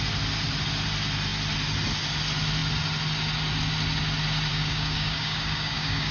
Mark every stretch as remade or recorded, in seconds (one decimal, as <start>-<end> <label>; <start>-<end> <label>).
0.0-4.5 recorded; 4.5-6.1 remade

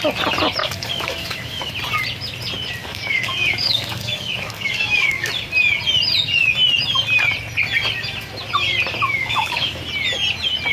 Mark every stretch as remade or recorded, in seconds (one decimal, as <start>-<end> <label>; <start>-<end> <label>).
0.0-0.6 recorded; 0.6-1.7 remade; 1.7-2.8 recorded; 2.8-5.3 remade; 5.3-9.2 recorded; 9.2-9.8 remade; 9.8-10.7 recorded